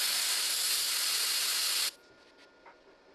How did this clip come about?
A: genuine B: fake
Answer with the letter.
A